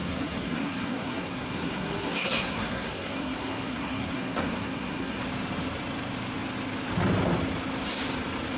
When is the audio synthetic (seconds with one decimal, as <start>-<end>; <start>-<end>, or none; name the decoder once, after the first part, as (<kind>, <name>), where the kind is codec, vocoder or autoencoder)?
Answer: 0.0-5.2 (codec, SNAC)